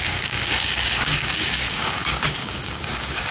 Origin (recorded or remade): remade